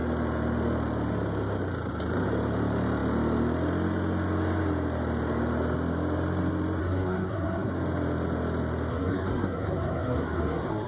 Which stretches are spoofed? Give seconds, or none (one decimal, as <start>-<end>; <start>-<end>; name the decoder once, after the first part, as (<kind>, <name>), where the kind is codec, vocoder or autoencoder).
6.8-7.7 (codec, SNAC); 8.9-10.9